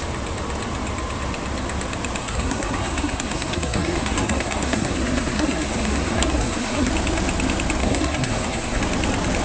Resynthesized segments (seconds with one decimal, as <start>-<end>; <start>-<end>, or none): 2.2-6.9; 7.8-8.8